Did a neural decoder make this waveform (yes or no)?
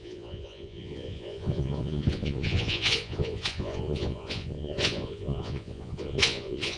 yes